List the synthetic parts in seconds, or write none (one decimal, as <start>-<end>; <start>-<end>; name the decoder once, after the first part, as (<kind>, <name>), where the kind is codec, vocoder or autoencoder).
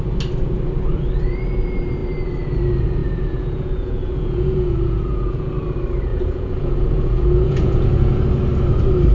3.0-5.5 (vocoder, Vocos); 6.1-8.2